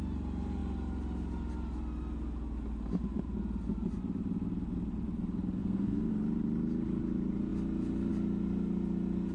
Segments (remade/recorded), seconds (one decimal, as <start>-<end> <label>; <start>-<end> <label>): 0.0-5.6 recorded; 5.6-6.1 remade; 6.1-9.3 recorded